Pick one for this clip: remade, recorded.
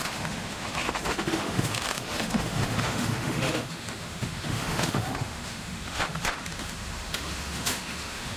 remade